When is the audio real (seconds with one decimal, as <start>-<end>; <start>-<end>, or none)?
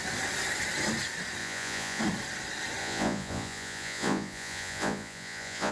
0.0-1.4; 2.0-2.8